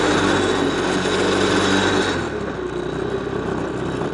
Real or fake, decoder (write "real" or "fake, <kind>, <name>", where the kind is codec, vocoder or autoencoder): real